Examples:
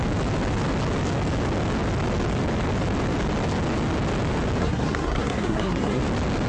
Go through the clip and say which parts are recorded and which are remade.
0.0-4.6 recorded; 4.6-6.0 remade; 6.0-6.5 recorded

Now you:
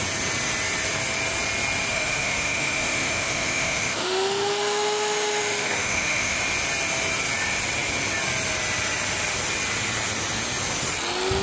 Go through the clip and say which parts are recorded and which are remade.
0.0-1.9 recorded; 1.9-6.4 remade; 6.4-11.4 recorded